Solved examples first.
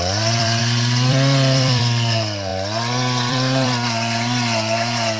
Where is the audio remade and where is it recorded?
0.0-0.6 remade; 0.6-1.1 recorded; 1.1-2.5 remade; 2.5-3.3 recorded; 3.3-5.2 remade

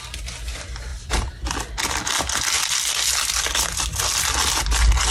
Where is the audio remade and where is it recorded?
0.0-0.9 recorded; 0.9-1.4 remade; 1.4-5.1 recorded

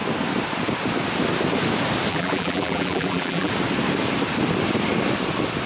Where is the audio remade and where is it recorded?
0.0-2.1 recorded; 2.1-3.5 remade; 3.5-5.7 recorded